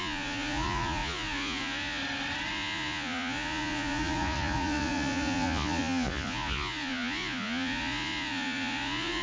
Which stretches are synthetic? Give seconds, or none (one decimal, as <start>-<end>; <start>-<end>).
0.0-2.0; 2.5-9.2